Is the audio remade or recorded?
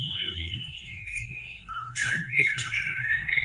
remade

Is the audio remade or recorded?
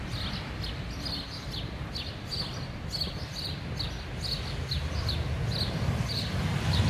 recorded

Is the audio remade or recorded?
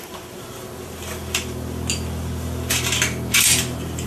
recorded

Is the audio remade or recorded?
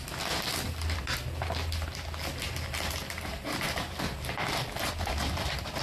recorded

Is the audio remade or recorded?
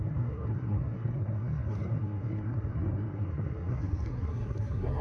remade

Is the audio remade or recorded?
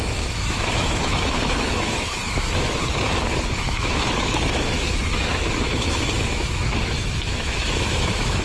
remade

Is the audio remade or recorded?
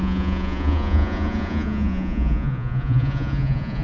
remade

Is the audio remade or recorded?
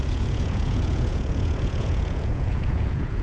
remade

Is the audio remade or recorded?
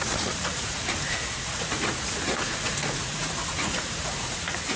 remade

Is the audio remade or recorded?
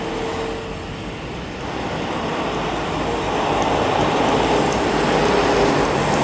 recorded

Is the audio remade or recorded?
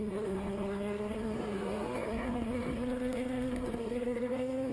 remade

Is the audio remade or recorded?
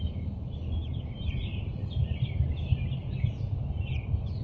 recorded